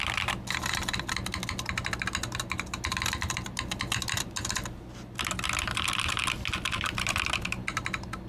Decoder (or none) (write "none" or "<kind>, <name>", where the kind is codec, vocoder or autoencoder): none